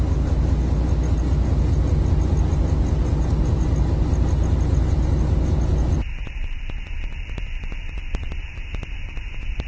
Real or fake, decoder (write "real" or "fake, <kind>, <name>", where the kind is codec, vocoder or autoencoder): real